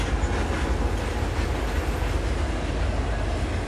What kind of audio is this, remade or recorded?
recorded